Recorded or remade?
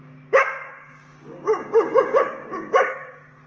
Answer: remade